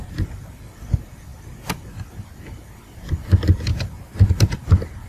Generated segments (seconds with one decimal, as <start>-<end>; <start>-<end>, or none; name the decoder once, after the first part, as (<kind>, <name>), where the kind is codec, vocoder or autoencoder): 0.0-1.3 (vocoder, BigVGAN v2); 4.4-5.1